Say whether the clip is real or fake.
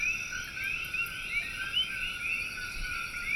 real